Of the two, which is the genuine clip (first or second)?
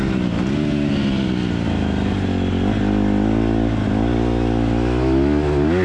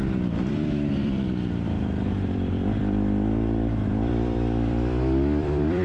first